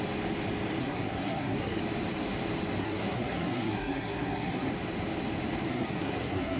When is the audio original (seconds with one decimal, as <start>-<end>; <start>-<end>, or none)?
0.0-0.8; 1.8-2.8; 4.7-5.7